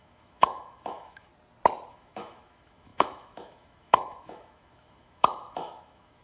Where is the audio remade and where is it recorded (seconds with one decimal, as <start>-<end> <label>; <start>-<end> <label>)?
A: 0.0-1.3 remade; 1.3-1.9 recorded; 1.9-6.2 remade